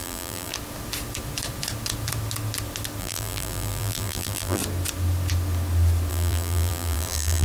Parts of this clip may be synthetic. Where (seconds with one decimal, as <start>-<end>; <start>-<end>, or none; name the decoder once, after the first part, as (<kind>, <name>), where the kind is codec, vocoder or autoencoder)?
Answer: 0.0-0.5 (vocoder, BigVGAN v2); 3.0-4.6; 6.1-7.4